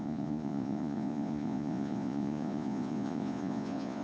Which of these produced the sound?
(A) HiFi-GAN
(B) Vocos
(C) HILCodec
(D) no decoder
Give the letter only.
B